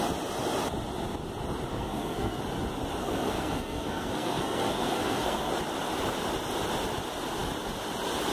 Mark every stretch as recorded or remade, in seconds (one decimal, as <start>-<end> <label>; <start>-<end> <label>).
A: 0.0-1.7 recorded; 1.7-2.4 remade; 2.4-3.0 recorded; 3.0-5.5 remade; 5.5-8.3 recorded